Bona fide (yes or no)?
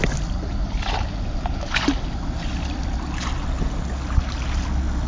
yes